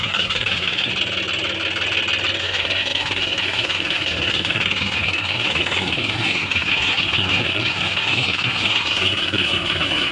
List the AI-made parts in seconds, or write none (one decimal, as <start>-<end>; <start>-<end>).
0.0-0.9; 2.4-10.1